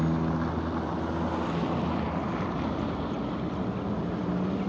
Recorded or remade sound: recorded